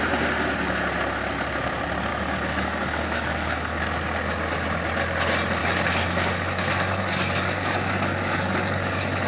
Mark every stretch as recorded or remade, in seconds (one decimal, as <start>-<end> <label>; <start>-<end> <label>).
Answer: 0.0-2.1 recorded; 2.1-3.8 remade; 3.8-5.6 recorded; 5.6-9.3 remade